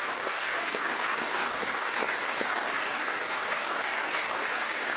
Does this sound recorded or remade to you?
remade